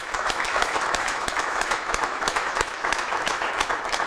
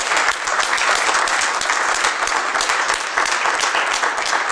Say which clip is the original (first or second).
second